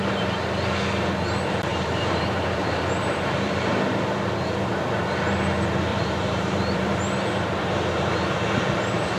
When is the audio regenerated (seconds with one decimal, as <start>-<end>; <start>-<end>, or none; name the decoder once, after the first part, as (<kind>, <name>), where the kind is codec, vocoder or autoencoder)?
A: 1.7-3.7 (vocoder, BigVGAN v2); 5.9-7.0; 7.6-8.1